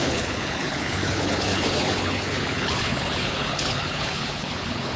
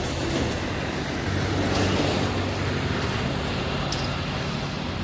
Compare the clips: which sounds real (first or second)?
second